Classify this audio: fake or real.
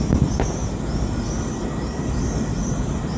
real